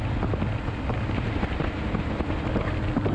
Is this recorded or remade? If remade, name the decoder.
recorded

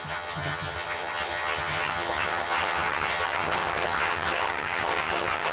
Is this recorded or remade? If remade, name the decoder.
remade, vocoder, HiFi-GAN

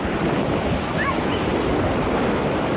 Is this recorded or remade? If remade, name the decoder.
recorded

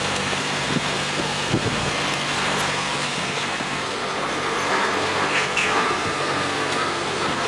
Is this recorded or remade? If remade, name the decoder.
remade, codec, SNAC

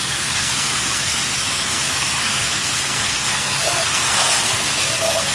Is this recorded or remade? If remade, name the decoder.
remade, codec, SNAC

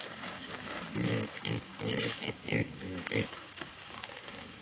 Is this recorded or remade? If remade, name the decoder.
remade, codec, DAC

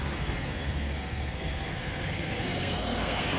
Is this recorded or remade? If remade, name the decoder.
remade, codec, SNAC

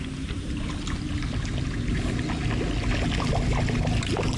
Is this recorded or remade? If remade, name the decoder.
recorded